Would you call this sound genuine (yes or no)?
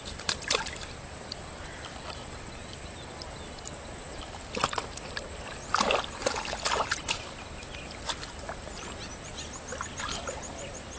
yes